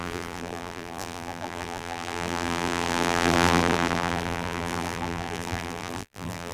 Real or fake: fake